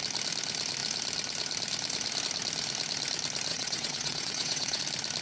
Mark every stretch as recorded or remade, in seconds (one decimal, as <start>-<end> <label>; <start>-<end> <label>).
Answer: 0.0-3.5 recorded; 3.5-4.8 remade; 4.8-5.2 recorded